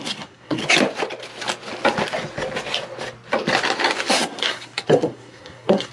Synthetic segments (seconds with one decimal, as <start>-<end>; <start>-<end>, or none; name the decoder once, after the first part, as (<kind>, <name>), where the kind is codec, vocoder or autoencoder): 0.0-0.6 (codec, SNAC); 4.1-5.9